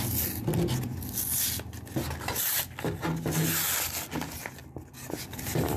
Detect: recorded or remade recorded